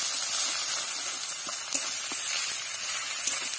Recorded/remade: recorded